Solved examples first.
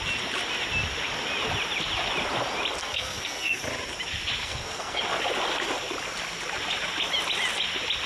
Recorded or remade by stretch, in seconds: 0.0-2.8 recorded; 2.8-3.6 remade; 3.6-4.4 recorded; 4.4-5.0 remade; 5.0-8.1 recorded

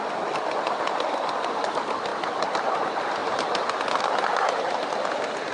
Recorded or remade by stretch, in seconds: 0.0-5.5 recorded

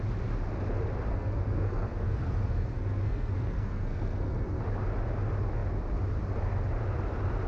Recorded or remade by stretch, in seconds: 0.0-1.1 recorded; 1.1-4.6 remade; 4.6-7.5 recorded

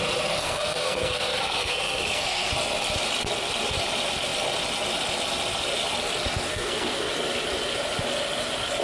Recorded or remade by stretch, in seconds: 0.0-0.4 recorded; 0.4-2.5 remade; 2.5-6.5 recorded; 6.5-7.1 remade; 7.1-8.8 recorded

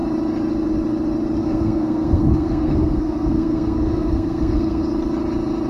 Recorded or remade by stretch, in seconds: 0.0-1.4 recorded; 1.4-4.8 remade; 4.8-5.7 recorded